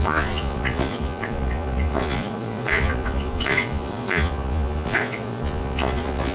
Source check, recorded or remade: remade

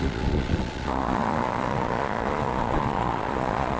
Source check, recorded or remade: remade